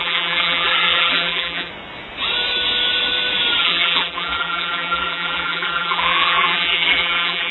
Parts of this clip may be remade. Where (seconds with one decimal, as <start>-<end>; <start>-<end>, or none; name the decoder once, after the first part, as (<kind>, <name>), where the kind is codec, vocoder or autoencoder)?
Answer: 0.0-1.7 (vocoder, BigVGAN v2); 3.6-7.5